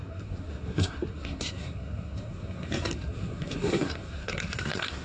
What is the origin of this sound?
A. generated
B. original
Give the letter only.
A